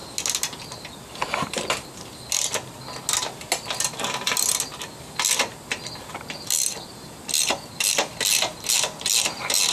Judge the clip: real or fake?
real